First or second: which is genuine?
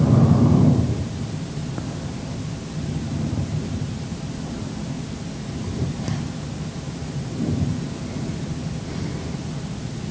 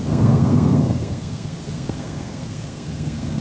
first